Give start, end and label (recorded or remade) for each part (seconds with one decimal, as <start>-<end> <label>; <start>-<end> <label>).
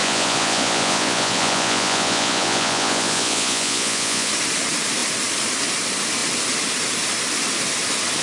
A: 0.0-4.3 remade; 4.3-8.2 recorded